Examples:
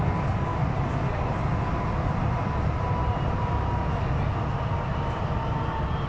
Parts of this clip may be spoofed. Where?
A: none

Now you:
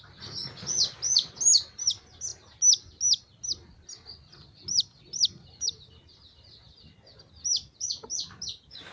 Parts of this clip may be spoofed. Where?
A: none

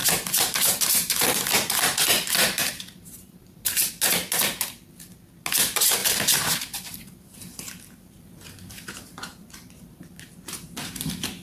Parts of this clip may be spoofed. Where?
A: 0.0-3.9 (vocoder, BigVGAN v2); 6.0-10.3

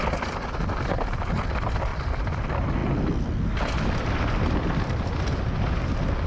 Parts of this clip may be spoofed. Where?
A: 1.9-2.4 (vocoder, BigVGAN v2)